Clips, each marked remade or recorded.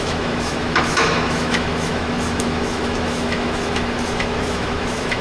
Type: remade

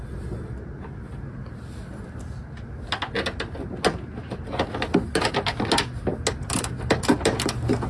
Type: recorded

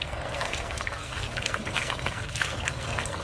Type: remade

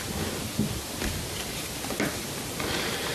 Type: recorded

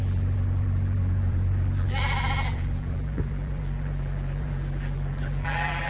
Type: remade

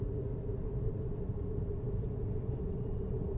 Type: recorded